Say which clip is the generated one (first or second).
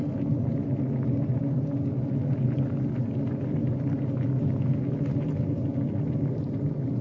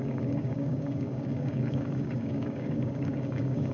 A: second